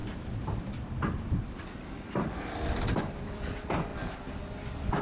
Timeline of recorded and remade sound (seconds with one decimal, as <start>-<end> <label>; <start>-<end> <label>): 0.0-3.9 remade; 3.9-5.0 recorded